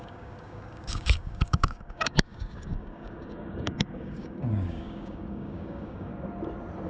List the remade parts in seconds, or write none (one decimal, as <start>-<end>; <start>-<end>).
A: 0.0-6.1